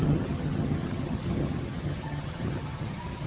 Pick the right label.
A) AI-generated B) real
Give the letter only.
A